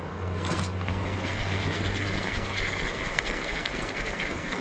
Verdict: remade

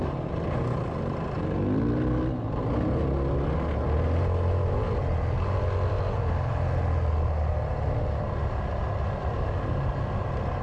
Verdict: recorded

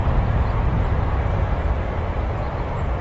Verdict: remade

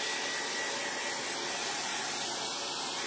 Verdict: recorded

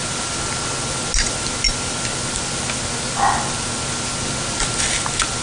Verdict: recorded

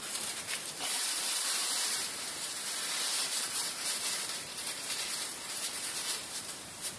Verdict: remade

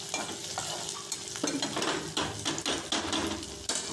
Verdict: recorded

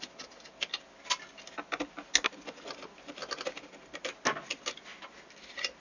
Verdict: recorded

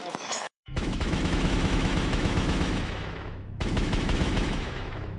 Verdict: remade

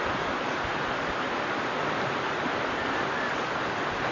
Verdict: recorded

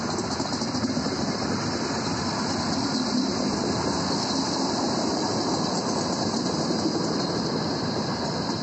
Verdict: recorded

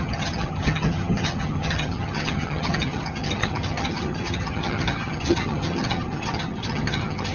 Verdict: remade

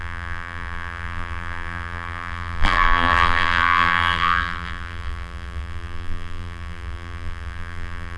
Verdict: remade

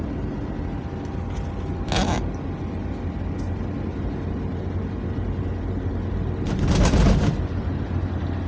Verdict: recorded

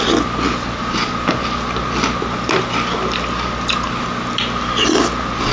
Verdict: recorded